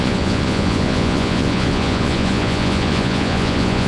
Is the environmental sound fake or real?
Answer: fake